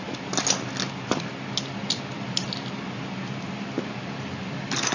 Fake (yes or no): no